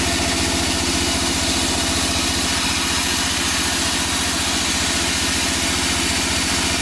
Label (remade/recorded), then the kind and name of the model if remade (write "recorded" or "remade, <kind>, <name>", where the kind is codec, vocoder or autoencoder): recorded